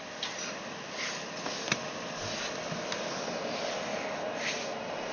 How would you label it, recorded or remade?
recorded